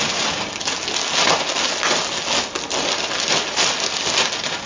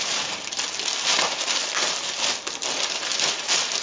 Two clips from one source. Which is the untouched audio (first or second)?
first